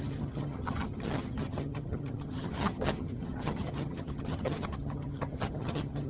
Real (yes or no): no